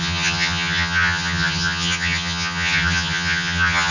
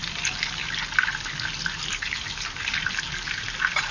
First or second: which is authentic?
second